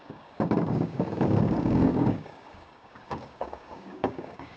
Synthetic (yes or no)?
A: yes